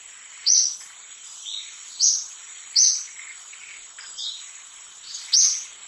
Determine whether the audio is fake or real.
fake